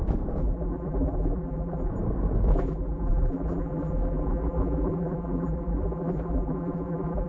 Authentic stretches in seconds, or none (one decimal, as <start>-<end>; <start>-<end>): 0.0-0.4; 1.9-2.5